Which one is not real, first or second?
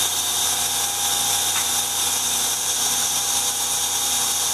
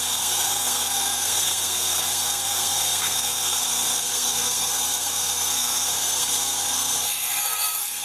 second